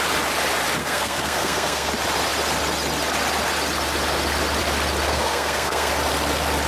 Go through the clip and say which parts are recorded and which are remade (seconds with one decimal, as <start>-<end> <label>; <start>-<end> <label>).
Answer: 0.0-0.8 recorded; 0.8-1.9 remade; 1.9-5.1 recorded; 5.1-5.9 remade; 5.9-6.7 recorded